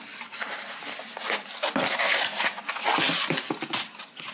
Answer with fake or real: real